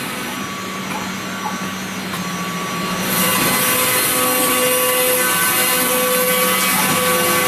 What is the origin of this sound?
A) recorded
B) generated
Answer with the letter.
A